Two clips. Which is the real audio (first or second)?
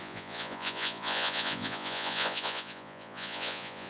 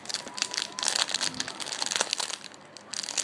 second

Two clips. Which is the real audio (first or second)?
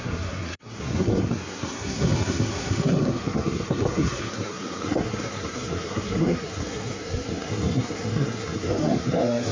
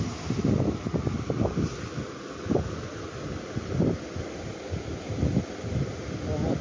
second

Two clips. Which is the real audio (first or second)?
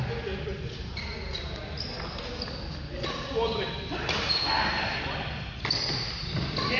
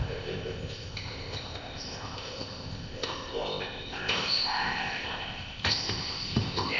first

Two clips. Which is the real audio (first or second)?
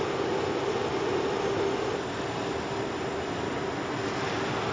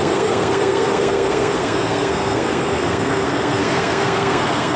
first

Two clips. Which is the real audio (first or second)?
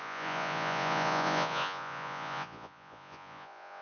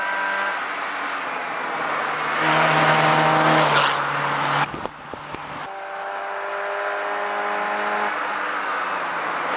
second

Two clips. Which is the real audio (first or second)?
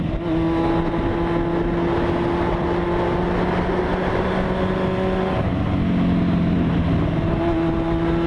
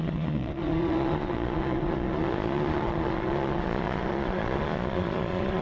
first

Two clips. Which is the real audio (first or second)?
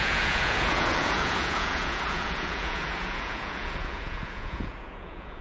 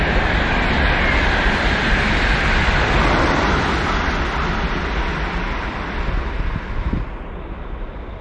second